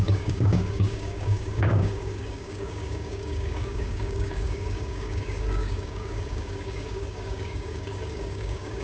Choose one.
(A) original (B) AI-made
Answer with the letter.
B